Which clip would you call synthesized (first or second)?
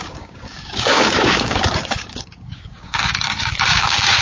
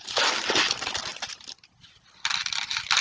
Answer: first